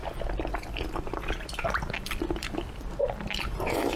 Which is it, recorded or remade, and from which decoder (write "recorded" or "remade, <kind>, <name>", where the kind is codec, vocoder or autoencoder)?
remade, vocoder, BigVGAN v2